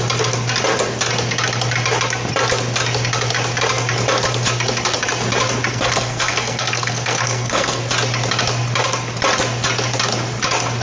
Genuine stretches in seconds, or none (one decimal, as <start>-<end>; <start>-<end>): 0.0-5.7; 7.8-10.8